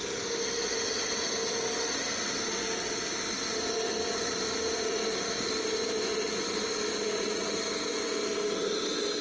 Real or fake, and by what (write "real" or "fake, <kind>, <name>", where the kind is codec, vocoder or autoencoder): real